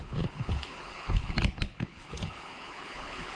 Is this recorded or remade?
remade